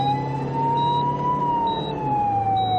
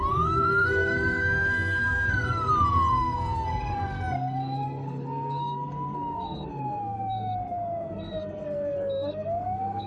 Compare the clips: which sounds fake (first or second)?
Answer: second